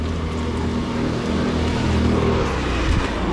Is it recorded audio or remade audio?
recorded